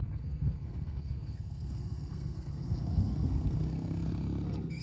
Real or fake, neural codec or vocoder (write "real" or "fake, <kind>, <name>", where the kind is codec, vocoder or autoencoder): fake, codec, SNAC